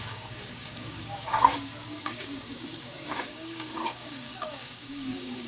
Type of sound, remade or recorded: remade